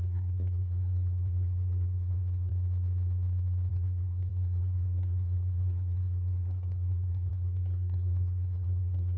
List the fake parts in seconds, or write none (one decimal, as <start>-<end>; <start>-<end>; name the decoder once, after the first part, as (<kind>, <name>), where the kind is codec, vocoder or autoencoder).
0.0-2.5 (codec, SNAC); 3.7-9.2